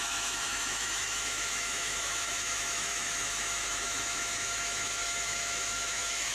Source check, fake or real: fake